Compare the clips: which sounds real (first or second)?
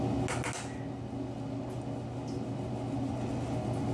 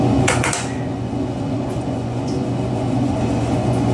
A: first